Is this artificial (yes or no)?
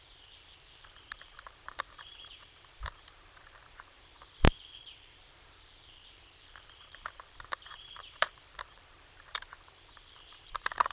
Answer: yes